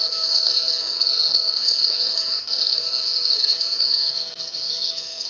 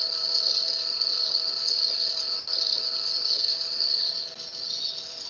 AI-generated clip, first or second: first